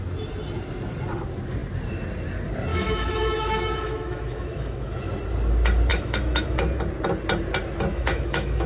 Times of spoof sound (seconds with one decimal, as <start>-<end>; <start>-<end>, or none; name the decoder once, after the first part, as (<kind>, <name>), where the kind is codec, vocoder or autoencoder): 2.7-5.0 (autoencoder, DAC-VAE); 5.9-6.6; 7.9-8.7